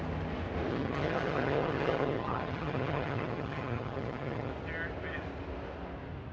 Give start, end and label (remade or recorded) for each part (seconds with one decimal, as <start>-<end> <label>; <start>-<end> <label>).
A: 0.0-0.7 recorded; 0.7-4.5 remade; 4.5-6.3 recorded